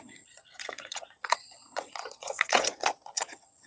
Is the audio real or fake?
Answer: fake